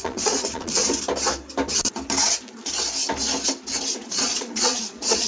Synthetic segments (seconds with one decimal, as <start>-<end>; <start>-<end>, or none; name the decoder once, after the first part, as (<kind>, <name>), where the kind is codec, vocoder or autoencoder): 0.0-0.8 (vocoder, Vocos); 3.9-5.3